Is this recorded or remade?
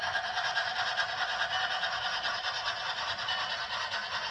recorded